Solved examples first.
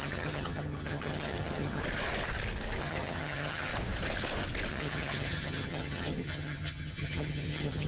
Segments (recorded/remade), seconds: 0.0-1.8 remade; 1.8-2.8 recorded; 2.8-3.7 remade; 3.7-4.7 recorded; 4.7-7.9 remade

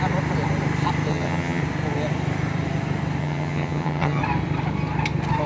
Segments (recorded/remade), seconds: 0.0-1.1 recorded; 1.1-1.6 remade; 1.6-3.2 recorded; 3.2-4.2 remade; 4.2-5.5 recorded

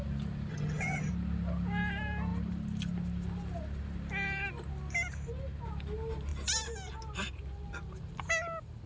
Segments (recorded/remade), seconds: 0.0-0.5 recorded; 0.5-1.1 remade; 1.1-8.9 recorded